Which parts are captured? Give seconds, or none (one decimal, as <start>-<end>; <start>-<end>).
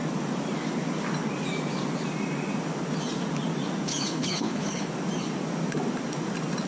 0.0-3.9; 4.9-6.7